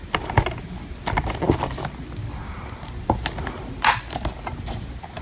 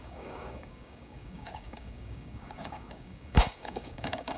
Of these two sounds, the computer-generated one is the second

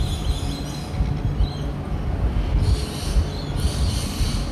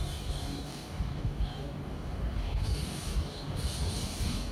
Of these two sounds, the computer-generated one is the second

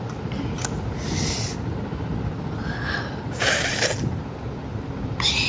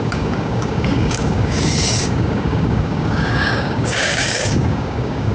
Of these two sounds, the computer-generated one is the second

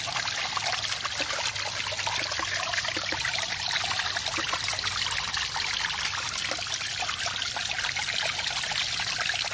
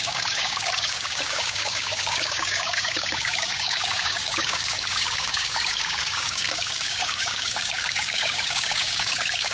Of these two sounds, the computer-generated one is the second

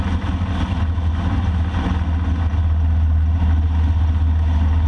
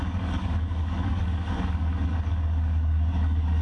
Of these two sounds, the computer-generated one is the second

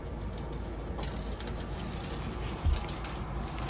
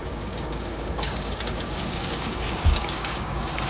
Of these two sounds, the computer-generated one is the second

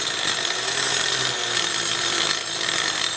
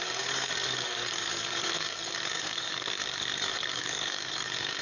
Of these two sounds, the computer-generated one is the second